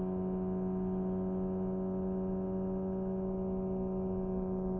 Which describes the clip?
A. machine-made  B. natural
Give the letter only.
B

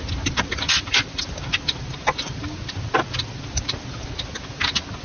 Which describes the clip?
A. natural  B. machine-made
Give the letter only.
A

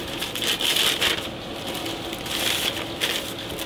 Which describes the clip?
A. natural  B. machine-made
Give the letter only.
A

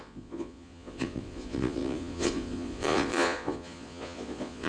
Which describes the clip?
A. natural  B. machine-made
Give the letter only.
B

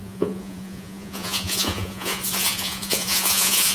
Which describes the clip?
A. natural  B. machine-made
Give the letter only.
B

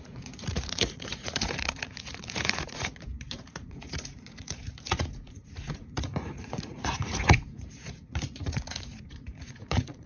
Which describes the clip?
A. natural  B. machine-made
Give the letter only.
B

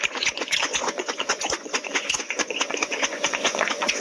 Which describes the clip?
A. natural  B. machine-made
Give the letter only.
B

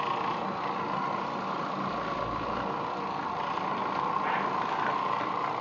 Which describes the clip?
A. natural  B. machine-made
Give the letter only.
A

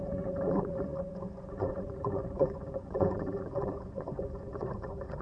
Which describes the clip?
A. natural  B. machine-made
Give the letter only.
B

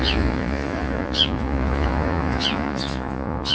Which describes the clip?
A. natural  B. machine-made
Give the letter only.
B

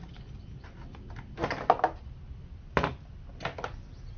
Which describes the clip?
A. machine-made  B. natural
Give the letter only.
B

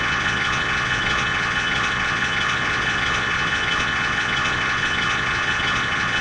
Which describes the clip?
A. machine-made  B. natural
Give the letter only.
A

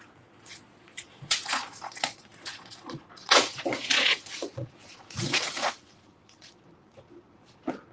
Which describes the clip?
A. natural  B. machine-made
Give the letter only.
B